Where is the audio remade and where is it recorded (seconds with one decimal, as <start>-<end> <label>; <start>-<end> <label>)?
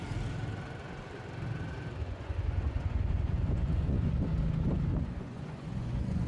0.0-2.0 recorded; 2.0-4.2 remade; 4.2-4.9 recorded; 4.9-6.3 remade